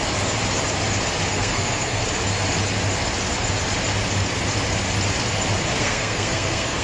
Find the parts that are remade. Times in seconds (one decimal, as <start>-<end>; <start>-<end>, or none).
1.3-2.0; 5.8-6.8

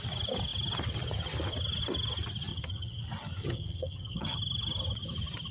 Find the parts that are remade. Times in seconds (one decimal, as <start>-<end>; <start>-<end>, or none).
2.5-3.0; 3.4-4.4

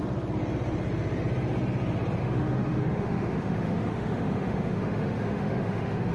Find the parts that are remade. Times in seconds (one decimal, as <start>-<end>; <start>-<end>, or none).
2.2-6.1

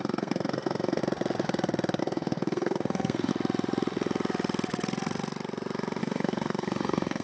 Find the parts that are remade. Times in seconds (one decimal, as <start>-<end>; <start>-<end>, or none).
0.0-1.0; 2.0-3.3; 6.0-7.2